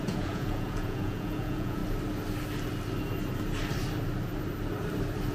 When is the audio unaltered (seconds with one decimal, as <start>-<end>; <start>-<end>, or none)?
1.8-5.3